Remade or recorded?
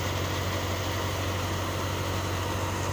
recorded